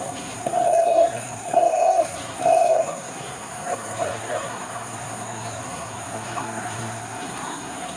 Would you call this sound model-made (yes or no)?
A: yes